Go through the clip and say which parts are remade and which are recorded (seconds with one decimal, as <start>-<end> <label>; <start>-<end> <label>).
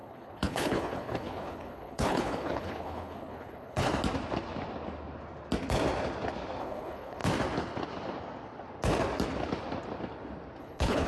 0.0-3.9 remade; 3.9-6.6 recorded; 6.6-7.2 remade; 7.2-10.6 recorded; 10.6-11.1 remade